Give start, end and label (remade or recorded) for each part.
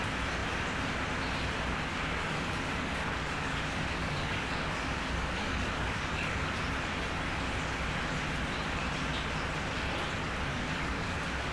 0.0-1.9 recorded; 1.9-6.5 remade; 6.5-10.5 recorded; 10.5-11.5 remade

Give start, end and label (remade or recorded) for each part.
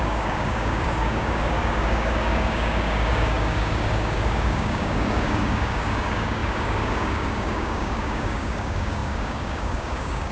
0.0-10.3 remade